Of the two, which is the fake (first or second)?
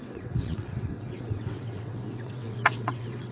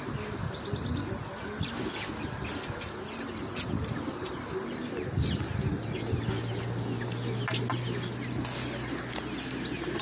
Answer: first